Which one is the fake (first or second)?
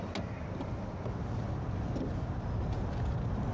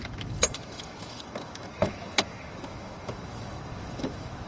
second